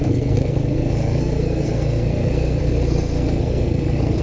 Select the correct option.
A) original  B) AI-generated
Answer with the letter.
B